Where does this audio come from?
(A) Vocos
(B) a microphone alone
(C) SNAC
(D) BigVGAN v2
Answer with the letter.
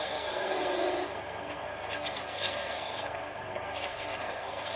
C